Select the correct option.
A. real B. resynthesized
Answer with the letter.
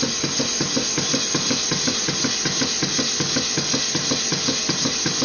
A